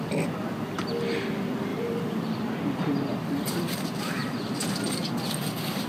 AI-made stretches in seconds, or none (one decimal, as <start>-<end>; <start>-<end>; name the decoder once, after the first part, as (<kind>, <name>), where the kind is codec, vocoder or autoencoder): 1.7-2.3 (vocoder, BigVGAN v2); 3.1-3.6